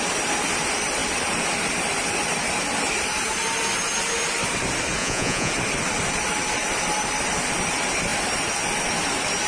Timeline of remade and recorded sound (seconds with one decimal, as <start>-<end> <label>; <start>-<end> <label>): 0.0-5.0 recorded; 5.0-5.5 remade; 5.5-9.5 recorded